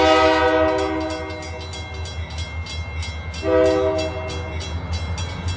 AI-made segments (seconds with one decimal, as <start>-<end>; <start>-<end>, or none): none